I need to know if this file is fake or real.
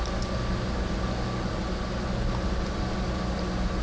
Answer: real